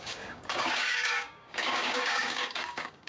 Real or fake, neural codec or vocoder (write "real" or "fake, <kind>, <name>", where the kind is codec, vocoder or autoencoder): fake, codec, DAC